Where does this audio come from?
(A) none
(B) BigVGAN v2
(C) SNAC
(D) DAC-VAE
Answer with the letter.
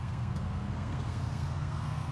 C